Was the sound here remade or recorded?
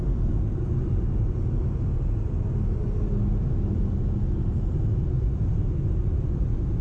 recorded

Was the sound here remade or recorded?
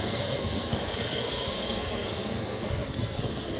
remade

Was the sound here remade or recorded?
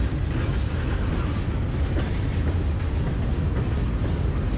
recorded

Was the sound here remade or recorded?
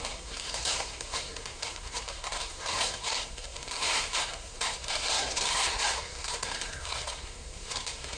remade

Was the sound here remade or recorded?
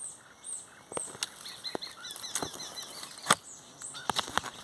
recorded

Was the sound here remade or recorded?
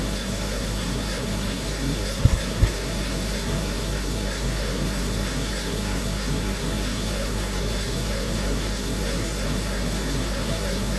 remade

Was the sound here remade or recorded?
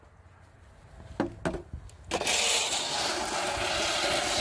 recorded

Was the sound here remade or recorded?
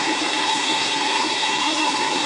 remade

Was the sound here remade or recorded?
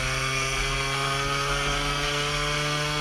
remade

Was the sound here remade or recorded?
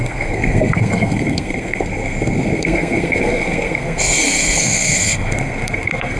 remade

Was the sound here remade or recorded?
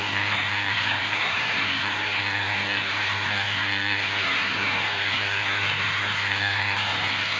remade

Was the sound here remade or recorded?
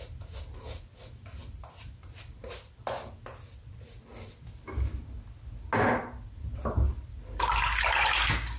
recorded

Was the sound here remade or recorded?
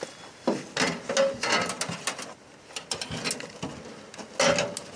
recorded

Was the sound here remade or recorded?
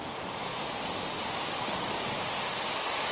recorded